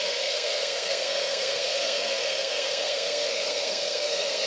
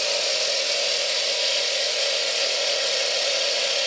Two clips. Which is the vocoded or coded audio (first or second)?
first